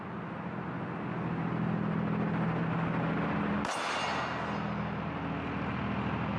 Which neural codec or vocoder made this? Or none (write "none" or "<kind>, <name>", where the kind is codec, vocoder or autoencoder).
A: none